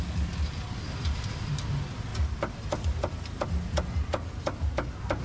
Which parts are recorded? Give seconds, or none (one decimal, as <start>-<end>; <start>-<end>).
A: 0.0-5.2